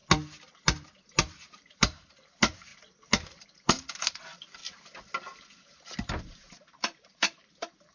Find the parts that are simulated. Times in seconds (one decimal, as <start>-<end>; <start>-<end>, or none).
0.5-2.7; 3.4-4.6; 6.2-7.9